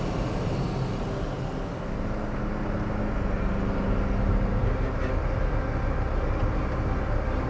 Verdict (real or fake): real